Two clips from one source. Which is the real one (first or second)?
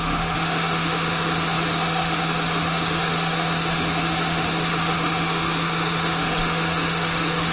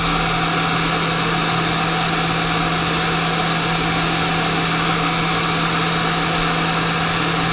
second